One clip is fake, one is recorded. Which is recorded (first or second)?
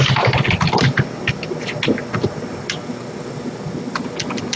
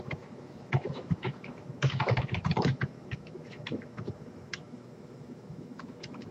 first